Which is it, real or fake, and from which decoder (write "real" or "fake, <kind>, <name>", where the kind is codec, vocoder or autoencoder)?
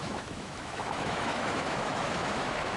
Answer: fake, autoencoder, DAC-VAE